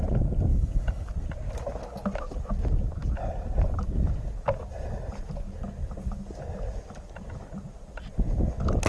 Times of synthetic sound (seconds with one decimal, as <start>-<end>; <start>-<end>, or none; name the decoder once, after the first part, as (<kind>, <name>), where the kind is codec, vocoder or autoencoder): 0.5-1.1 (autoencoder, DAC-VAE)